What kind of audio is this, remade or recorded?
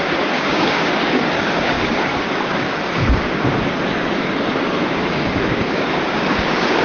remade